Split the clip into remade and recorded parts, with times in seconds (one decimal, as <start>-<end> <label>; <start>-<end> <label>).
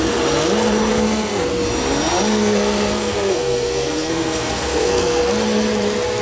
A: 0.0-0.9 recorded; 0.9-1.5 remade; 1.5-2.3 recorded; 2.3-5.2 remade; 5.2-6.2 recorded